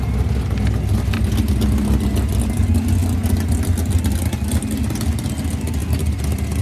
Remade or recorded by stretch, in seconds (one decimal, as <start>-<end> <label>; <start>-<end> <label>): 0.0-3.0 recorded; 3.0-4.1 remade; 4.1-6.6 recorded